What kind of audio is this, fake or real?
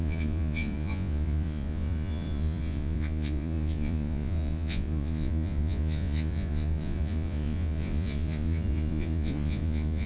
fake